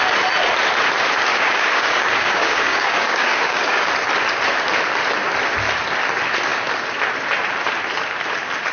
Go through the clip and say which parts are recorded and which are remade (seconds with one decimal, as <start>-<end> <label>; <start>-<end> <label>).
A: 0.0-1.3 recorded; 1.3-3.9 remade; 3.9-8.7 recorded

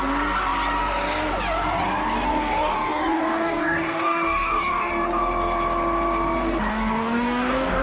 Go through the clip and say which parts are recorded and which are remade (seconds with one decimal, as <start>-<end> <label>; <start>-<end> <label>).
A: 0.0-2.3 recorded; 2.3-4.9 remade; 4.9-6.7 recorded; 6.7-7.8 remade

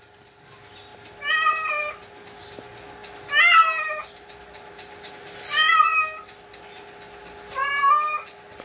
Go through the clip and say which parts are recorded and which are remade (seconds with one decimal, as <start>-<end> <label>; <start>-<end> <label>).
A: 0.0-8.6 recorded

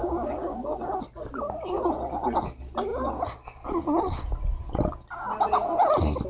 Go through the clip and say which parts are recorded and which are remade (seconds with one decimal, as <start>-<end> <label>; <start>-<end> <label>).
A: 0.0-1.0 remade; 1.0-6.3 recorded